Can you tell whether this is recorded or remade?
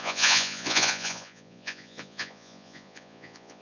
remade